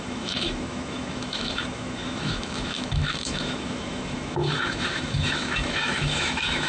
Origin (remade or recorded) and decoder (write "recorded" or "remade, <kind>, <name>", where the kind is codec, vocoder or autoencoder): remade, autoencoder, DAC-VAE